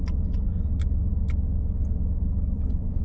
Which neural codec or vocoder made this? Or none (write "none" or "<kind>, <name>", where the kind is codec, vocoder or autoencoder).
none